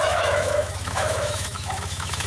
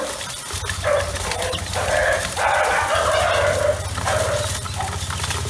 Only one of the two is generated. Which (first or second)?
first